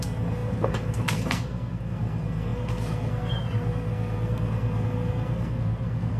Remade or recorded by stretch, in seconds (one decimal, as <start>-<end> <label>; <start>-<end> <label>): 0.0-6.2 remade